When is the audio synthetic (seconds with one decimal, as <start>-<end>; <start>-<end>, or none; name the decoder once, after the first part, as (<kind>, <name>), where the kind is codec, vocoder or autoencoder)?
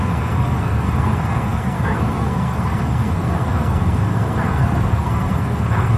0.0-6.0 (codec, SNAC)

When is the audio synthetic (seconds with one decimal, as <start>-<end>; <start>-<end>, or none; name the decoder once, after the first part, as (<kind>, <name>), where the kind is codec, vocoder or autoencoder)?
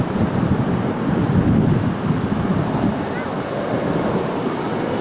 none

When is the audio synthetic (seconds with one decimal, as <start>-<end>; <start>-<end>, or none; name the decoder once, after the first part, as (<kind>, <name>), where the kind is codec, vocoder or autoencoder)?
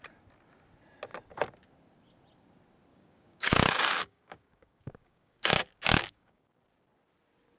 2.9-6.6 (codec, DAC)